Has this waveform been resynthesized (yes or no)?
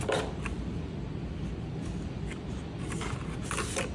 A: no